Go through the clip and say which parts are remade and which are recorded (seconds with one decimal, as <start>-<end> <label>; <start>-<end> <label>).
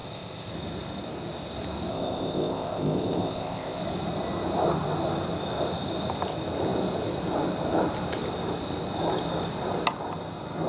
0.0-0.5 remade; 0.5-1.9 recorded; 1.9-3.8 remade; 3.8-10.7 recorded